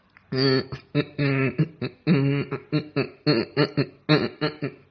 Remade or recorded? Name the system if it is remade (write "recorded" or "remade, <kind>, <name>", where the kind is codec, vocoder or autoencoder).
recorded